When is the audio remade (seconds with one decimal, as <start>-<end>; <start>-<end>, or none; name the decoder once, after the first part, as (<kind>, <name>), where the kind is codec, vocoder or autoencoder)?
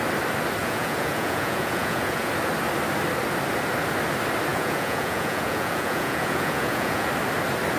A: 0.6-2.3 (vocoder, Vocos); 4.5-7.1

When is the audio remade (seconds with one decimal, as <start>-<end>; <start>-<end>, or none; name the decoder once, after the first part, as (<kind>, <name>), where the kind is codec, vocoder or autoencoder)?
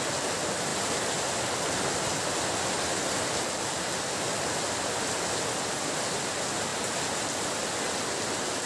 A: none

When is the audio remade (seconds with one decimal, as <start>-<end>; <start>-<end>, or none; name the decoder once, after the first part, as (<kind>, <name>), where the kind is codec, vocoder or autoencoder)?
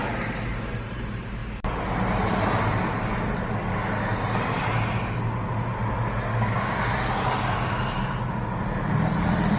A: 6.3-6.8 (codec, DAC)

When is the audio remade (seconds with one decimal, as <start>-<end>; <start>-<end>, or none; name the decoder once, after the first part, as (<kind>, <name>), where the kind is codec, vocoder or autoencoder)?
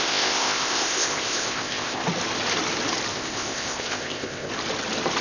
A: 0.0-2.0 (codec, ZipCodec); 3.1-4.5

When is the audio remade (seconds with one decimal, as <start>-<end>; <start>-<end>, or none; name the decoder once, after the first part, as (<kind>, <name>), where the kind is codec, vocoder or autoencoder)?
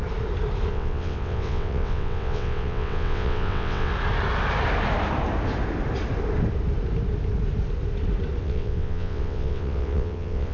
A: 0.7-3.9 (vocoder, WaveNeXt); 8.4-10.5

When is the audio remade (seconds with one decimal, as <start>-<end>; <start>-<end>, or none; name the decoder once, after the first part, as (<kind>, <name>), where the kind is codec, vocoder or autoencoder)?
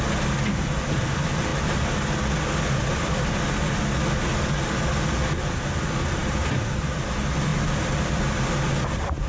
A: none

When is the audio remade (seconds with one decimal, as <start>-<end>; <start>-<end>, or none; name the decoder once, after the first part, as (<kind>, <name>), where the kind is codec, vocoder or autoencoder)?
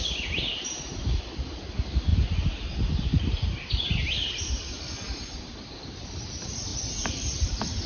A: 6.7-7.9 (vocoder, BigVGAN v2)